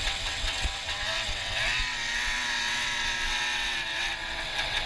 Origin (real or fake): fake